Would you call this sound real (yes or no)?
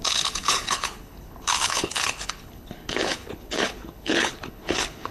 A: no